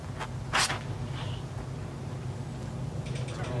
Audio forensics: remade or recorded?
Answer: recorded